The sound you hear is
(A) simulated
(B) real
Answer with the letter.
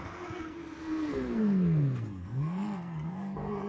A